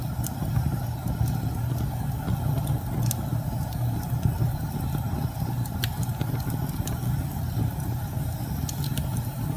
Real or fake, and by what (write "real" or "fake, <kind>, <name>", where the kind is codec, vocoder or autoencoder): real